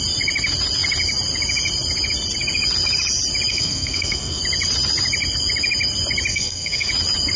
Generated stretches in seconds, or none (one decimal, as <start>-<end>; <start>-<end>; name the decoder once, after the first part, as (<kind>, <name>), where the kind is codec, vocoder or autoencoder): 3.5-4.4 (codec, SNAC); 6.3-6.9